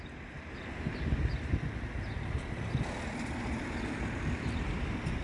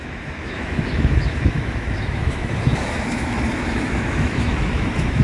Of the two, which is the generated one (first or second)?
second